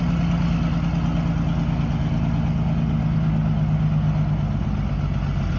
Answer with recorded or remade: recorded